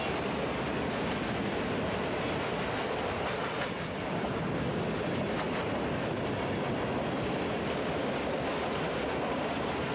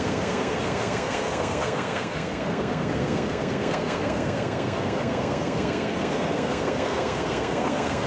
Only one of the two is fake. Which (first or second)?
second